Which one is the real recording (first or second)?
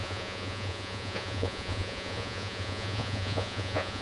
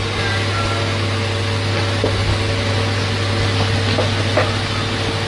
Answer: second